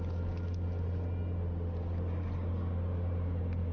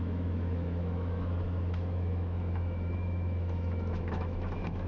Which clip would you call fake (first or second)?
second